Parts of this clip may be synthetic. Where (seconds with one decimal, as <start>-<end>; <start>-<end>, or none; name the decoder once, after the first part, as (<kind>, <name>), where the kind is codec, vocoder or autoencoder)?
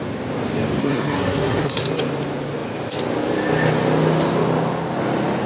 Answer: 0.8-1.8 (codec, SNAC)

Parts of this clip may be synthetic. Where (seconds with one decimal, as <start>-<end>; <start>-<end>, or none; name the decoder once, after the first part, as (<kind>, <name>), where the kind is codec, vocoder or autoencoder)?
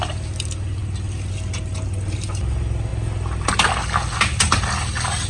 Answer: none